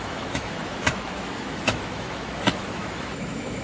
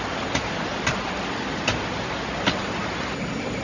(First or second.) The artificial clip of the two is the first